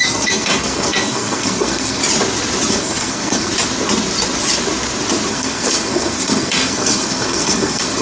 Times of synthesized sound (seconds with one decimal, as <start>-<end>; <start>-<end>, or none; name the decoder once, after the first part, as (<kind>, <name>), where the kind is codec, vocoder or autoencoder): 0.0-2.0 (codec, SNAC); 2.7-3.5; 5.3-8.0